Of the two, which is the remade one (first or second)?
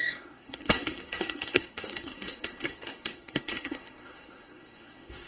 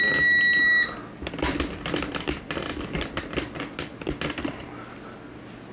first